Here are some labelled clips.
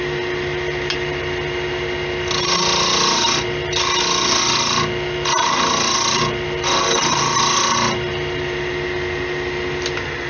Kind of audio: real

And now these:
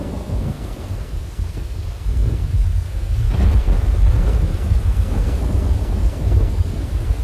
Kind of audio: fake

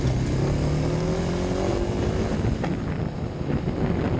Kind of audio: real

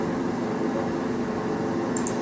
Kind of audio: real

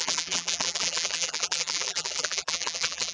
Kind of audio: fake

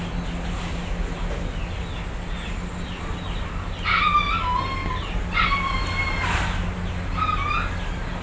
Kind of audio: real